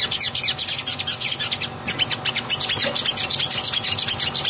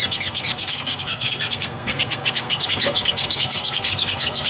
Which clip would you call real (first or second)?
first